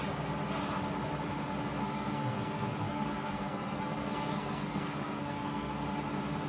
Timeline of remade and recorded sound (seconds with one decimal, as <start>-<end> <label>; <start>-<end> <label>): 0.0-1.8 recorded; 1.8-5.7 remade; 5.7-6.5 recorded